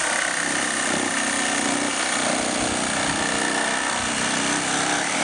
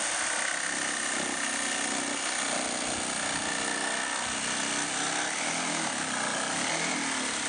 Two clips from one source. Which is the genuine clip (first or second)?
second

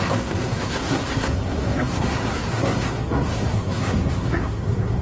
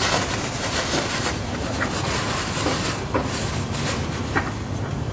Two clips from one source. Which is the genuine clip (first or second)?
second